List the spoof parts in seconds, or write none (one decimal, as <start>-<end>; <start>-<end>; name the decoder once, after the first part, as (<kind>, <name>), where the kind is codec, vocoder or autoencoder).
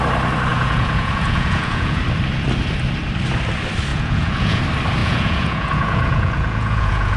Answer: 0.5-2.0 (vocoder, Vocos); 3.9-4.6; 5.0-7.2